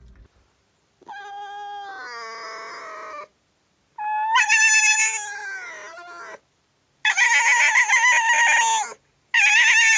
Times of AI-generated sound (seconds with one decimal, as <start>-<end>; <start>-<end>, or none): none